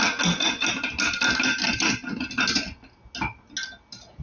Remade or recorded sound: recorded